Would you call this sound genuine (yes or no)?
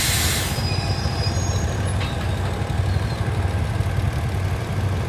yes